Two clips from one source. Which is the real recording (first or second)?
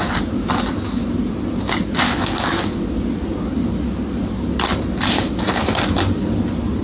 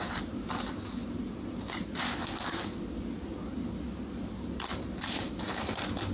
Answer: first